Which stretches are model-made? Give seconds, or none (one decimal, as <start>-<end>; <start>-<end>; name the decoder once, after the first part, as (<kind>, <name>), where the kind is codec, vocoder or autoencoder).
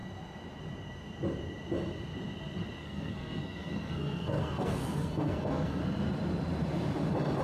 2.8-5.8 (codec, SNAC)